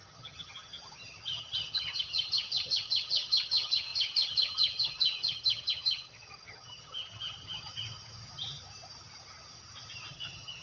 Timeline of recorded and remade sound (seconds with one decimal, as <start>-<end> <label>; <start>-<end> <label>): 0.0-7.7 remade; 7.7-10.1 recorded; 10.1-10.6 remade